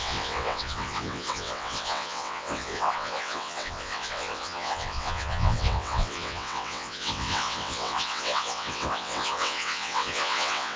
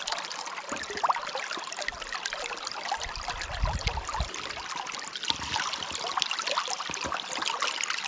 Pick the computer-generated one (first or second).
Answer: first